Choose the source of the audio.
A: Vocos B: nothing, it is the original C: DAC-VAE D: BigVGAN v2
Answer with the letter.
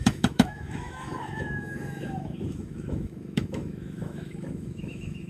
C